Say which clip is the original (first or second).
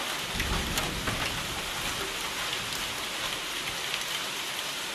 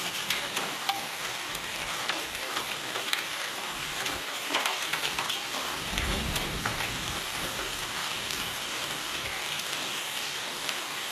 first